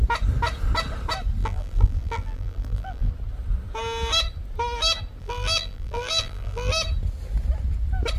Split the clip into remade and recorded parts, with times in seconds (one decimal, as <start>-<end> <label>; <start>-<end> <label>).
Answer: 0.0-1.4 recorded; 1.4-3.1 remade; 3.1-5.2 recorded; 5.2-6.7 remade; 6.7-8.2 recorded